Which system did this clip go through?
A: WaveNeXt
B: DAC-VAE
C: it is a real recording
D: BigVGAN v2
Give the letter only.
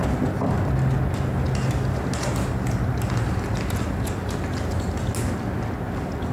C